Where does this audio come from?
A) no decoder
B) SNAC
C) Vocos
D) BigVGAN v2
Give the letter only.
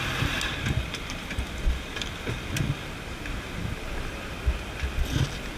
A